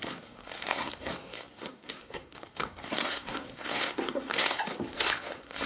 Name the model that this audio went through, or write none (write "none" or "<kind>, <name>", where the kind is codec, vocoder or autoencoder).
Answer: codec, SNAC